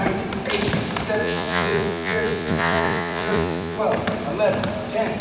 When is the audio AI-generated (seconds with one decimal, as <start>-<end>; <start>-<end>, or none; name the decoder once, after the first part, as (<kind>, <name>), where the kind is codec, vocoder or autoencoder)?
1.2-3.8 (vocoder, Vocos)